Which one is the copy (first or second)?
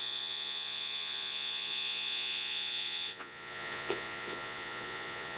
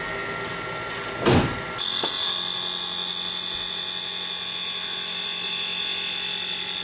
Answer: first